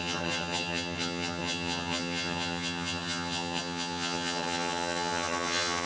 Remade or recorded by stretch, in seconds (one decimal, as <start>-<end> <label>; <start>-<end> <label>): 0.0-5.9 remade